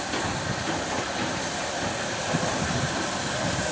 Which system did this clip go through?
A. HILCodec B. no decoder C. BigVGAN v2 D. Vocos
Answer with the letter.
C